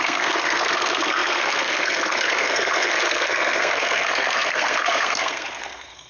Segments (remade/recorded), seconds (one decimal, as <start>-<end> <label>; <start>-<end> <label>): 0.0-6.1 remade